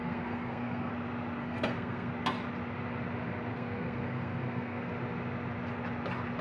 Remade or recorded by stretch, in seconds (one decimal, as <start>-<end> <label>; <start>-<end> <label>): 0.0-0.9 remade; 0.9-1.4 recorded; 1.4-2.1 remade; 2.1-3.5 recorded; 3.5-4.9 remade; 4.9-6.4 recorded